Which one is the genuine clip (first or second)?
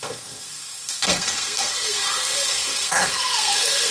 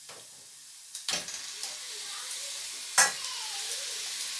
second